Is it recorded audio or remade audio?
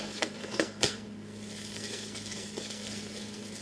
remade